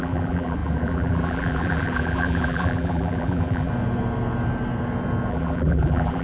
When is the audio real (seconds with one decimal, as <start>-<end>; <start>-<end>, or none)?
3.7-5.3